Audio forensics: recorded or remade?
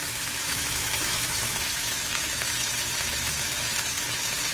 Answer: remade